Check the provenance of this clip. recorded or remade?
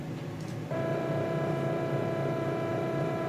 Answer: recorded